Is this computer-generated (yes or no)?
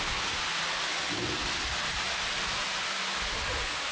no